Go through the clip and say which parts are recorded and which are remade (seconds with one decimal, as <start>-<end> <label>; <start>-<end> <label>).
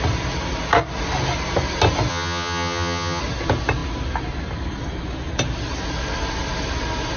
0.0-2.1 recorded; 2.1-3.2 remade; 3.2-7.2 recorded